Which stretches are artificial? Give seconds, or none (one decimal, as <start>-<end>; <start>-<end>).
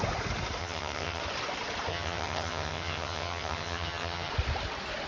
0.6-1.2; 1.9-4.3